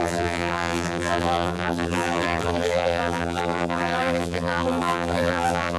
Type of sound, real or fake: fake